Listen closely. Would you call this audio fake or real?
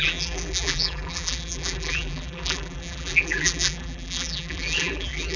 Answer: fake